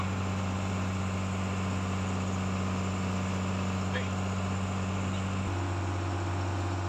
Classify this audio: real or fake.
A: real